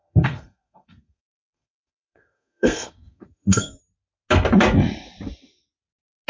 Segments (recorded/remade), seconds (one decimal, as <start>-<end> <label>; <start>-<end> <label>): 0.0-3.8 remade; 3.8-6.3 recorded